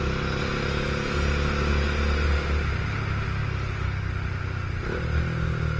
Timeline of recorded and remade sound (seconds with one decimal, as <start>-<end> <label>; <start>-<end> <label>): 0.0-3.4 recorded; 3.4-4.1 remade; 4.1-5.8 recorded